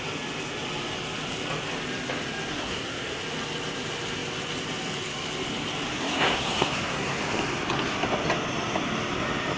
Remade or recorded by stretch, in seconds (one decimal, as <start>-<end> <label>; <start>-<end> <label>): 0.0-2.5 recorded; 2.5-3.2 remade; 3.2-5.9 recorded; 5.9-7.2 remade; 7.2-9.6 recorded